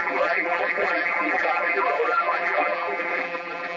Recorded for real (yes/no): no